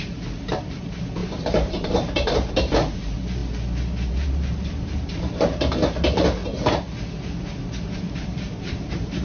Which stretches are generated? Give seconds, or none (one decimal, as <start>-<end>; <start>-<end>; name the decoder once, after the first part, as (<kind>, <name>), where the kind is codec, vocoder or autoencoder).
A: 0.0-3.4 (vocoder, BigVGAN v2); 4.1-6.4; 7.8-9.2